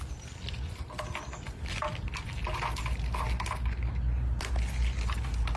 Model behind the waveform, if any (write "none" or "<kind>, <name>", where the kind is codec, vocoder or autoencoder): none